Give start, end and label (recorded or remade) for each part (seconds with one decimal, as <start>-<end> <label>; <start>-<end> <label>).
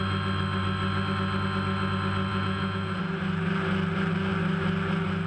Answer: 0.0-2.3 recorded; 2.3-3.0 remade; 3.0-5.3 recorded